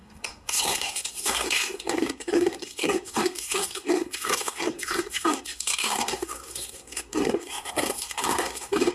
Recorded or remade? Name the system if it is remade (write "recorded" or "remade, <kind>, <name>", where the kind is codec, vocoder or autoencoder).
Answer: remade, codec, SNAC